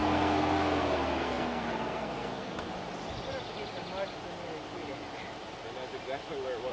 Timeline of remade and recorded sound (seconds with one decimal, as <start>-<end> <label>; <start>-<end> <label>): 0.0-2.7 remade; 2.7-6.7 recorded